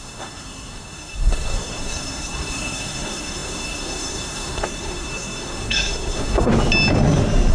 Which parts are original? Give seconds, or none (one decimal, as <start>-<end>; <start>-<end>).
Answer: 6.5-7.5